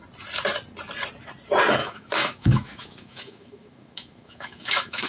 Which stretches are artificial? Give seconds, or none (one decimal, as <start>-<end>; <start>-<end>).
1.8-5.1